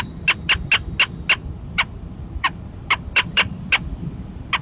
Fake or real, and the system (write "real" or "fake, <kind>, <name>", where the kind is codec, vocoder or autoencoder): real